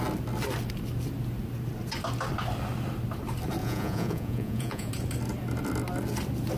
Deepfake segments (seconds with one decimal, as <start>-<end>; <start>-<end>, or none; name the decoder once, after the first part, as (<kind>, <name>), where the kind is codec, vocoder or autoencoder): 3.6-4.9 (vocoder, Vocos)